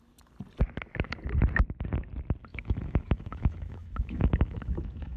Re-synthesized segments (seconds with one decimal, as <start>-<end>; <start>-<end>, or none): 2.5-5.2